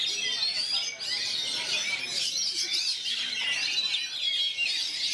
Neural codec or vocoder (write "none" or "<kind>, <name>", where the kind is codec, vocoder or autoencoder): none